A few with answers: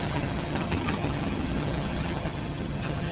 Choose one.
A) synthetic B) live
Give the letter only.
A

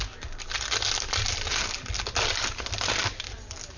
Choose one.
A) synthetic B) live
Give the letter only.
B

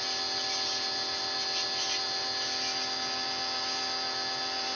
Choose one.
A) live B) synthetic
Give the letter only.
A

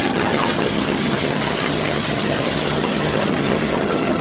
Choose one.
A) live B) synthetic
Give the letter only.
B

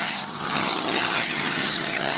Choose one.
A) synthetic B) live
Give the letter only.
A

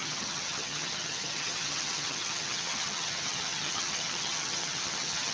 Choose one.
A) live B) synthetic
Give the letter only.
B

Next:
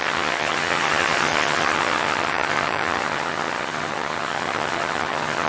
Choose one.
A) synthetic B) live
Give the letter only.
A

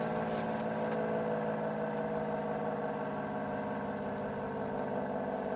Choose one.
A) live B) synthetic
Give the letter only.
A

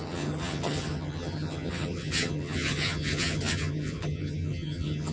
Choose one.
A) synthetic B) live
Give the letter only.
A